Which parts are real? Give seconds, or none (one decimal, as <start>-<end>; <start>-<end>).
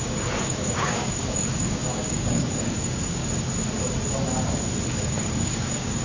3.2-4.9